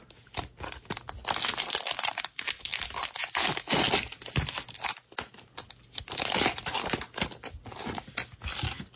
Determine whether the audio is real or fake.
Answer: real